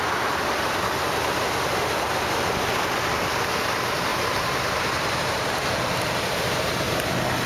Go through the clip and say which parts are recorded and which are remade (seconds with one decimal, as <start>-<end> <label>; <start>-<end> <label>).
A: 0.0-1.1 recorded; 1.1-2.1 remade; 2.1-4.1 recorded; 4.1-7.1 remade; 7.1-7.5 recorded